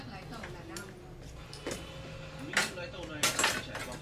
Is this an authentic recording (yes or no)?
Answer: yes